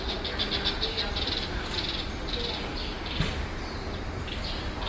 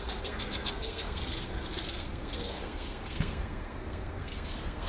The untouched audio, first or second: first